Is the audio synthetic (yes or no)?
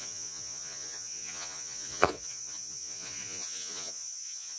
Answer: yes